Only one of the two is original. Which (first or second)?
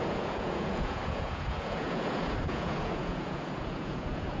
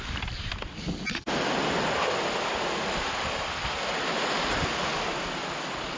second